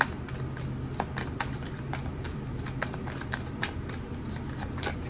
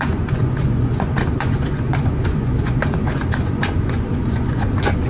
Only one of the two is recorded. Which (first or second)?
first